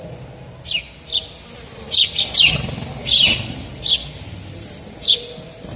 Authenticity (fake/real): real